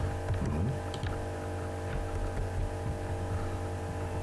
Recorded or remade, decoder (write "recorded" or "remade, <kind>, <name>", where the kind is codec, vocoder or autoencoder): recorded